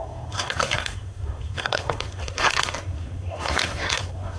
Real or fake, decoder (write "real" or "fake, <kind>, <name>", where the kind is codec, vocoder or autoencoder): fake, codec, SNAC